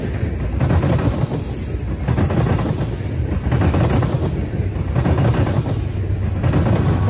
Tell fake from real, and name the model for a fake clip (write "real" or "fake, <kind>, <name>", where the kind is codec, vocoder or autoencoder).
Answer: real